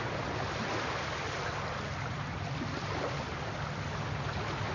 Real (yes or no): yes